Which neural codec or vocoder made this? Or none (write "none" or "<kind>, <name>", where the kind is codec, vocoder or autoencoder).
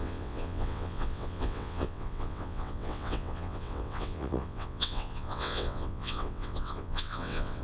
vocoder, WaveNeXt